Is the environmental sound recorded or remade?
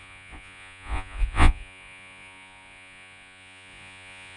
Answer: remade